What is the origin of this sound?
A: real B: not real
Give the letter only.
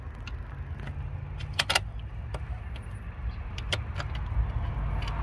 A